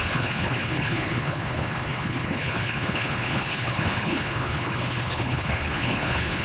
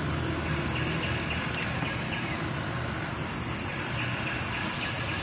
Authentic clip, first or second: second